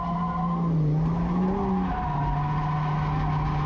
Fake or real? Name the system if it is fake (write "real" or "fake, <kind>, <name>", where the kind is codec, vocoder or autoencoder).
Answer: real